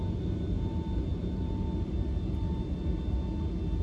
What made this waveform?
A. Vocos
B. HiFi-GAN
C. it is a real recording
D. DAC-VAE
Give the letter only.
C